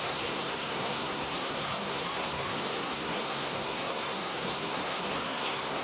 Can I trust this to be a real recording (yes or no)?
no